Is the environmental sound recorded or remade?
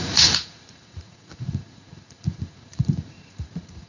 remade